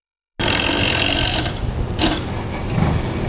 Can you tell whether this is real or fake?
real